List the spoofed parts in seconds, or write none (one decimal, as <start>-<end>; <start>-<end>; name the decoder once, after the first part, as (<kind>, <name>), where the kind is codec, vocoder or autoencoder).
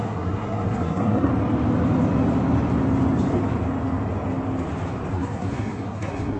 0.0-1.3 (codec, SNAC); 5.1-6.4